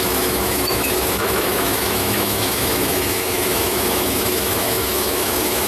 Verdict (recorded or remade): remade